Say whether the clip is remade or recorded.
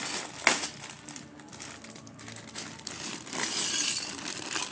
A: recorded